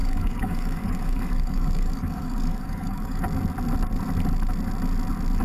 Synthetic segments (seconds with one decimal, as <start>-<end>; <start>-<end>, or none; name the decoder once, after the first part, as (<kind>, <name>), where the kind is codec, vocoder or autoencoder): 0.0-3.2 (codec, DAC)